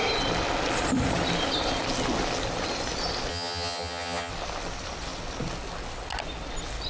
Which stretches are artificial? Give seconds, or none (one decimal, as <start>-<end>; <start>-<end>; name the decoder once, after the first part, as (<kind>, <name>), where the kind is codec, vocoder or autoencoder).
3.3-4.3 (vocoder, HiFi-GAN)